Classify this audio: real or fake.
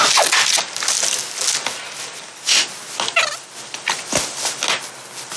real